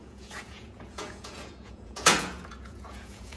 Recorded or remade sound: remade